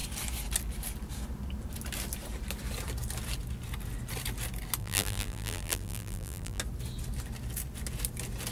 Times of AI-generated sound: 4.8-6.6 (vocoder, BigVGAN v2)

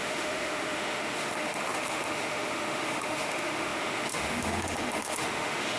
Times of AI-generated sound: 0.0-5.8 (autoencoder, DAC-VAE)

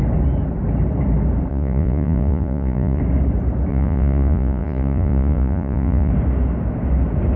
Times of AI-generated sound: 1.5-3.0 (vocoder, Vocos); 3.7-6.1

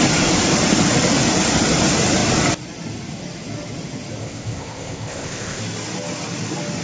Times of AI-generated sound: 4.2-5.6 (codec, ZipCodec)

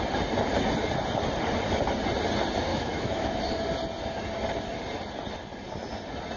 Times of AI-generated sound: 2.7-3.4 (autoencoder, DAC-VAE)

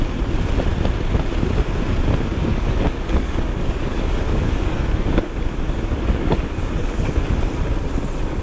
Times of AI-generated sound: 2.5-7.3 (codec, DAC)